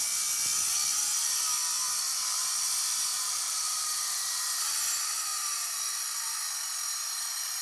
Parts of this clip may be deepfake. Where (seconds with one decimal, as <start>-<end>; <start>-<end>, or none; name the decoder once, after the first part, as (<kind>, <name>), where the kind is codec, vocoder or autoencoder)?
3.1-4.4 (vocoder, BigVGAN v2); 5.3-5.8